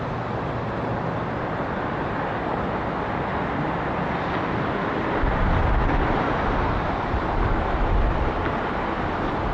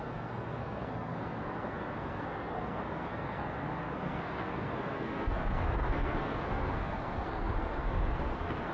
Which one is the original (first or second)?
first